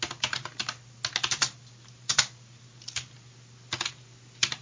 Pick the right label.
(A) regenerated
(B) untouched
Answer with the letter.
B